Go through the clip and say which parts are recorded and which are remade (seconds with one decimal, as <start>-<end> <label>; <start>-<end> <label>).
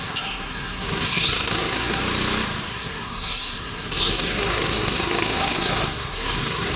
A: 0.0-2.0 remade; 2.0-2.7 recorded; 2.7-6.8 remade